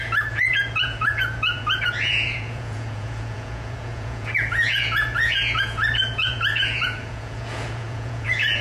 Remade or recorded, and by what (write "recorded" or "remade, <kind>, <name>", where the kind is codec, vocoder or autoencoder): remade, vocoder, Vocos